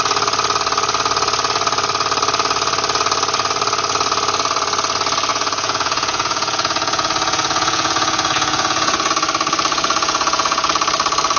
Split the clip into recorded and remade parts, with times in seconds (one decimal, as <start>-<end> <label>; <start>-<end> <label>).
0.0-5.3 recorded; 5.3-9.1 remade; 9.1-9.7 recorded; 9.7-10.7 remade; 10.7-11.4 recorded